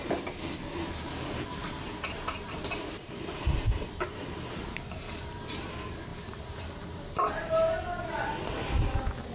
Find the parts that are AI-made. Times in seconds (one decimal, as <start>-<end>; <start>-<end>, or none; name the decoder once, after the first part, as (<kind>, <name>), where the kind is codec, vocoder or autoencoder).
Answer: 1.6-5.4 (vocoder, BigVGAN v2); 6.1-7.5